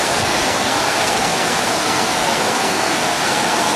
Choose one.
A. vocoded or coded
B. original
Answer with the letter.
A